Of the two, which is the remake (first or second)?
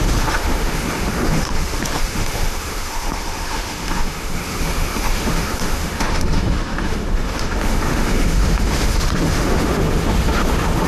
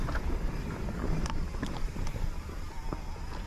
first